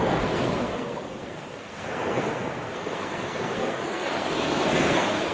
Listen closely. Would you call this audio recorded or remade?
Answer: remade